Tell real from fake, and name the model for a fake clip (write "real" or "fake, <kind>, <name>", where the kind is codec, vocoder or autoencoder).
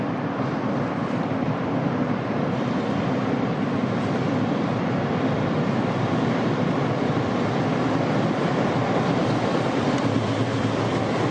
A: fake, vocoder, BigVGAN v2